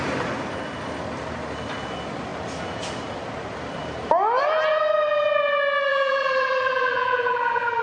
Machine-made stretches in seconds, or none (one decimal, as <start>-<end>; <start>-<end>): 5.9-7.8